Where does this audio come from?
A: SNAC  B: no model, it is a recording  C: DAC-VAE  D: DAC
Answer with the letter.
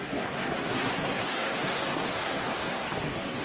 A